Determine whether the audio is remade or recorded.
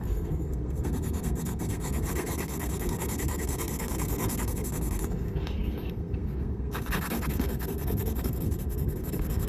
remade